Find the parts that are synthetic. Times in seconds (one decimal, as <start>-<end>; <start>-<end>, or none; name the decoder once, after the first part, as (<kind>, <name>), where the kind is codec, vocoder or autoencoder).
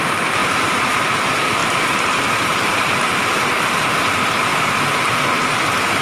0.0-4.5 (vocoder, BigVGAN v2)